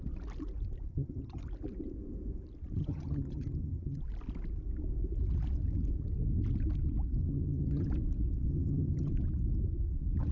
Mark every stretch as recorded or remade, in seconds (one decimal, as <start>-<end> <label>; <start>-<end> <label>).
0.0-0.9 recorded; 0.9-1.4 remade; 1.4-2.8 recorded; 2.8-4.0 remade; 4.0-7.2 recorded; 7.2-7.9 remade; 7.9-8.5 recorded; 8.5-9.1 remade; 9.1-10.3 recorded